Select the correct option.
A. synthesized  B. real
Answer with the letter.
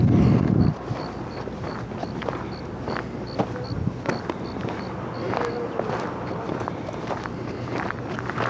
B